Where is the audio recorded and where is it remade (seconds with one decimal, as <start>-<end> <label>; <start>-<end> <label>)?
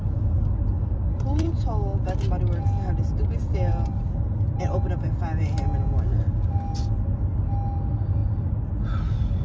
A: 0.0-0.7 recorded; 0.7-1.6 remade; 1.6-3.7 recorded; 3.7-4.6 remade; 4.6-9.4 recorded